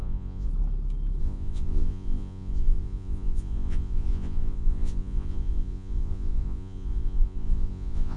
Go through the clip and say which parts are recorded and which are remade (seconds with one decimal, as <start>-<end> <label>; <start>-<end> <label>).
0.0-0.5 remade; 0.5-1.2 recorded; 1.2-8.2 remade